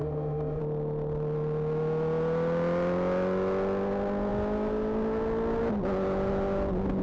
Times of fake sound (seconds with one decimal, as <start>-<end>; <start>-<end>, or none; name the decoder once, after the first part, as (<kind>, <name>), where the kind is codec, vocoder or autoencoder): 0.0-0.6 (autoencoder, DAC-VAE)